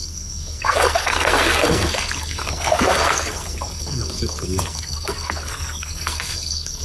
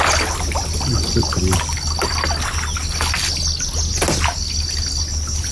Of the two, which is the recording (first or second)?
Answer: second